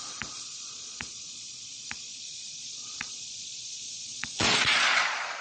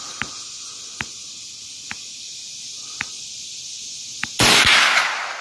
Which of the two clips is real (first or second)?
second